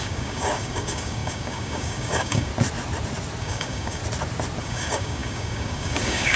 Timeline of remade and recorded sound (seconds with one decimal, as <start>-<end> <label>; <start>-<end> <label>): 0.0-2.5 remade; 2.5-3.4 recorded; 3.4-4.0 remade; 4.0-4.6 recorded; 4.6-6.4 remade